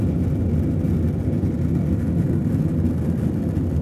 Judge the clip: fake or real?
real